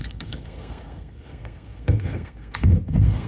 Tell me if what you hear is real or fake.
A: fake